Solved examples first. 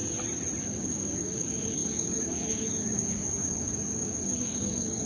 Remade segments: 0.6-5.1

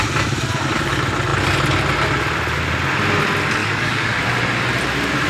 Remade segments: 3.6-4.2

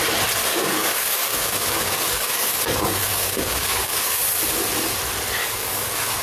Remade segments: 0.5-4.2; 5.4-6.2

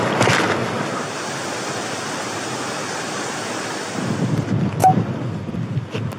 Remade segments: none

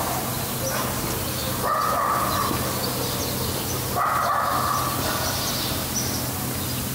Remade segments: none

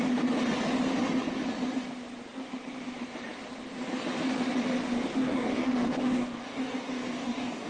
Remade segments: 5.2-7.7